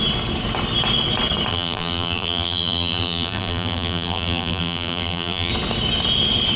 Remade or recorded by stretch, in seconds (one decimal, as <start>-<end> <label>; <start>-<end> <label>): 0.0-1.5 recorded; 1.5-5.5 remade; 5.5-6.6 recorded